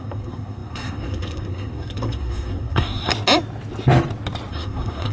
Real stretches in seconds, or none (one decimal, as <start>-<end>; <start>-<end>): 3.1-4.5